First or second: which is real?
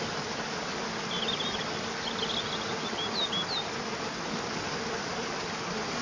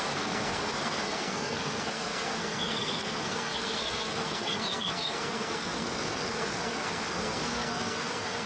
first